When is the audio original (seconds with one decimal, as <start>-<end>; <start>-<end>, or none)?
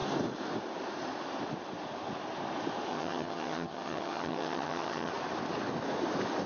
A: 0.0-2.9; 5.1-6.5